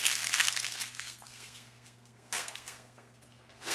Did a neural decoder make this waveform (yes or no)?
yes